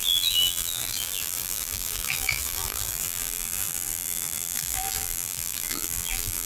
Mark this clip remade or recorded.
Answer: remade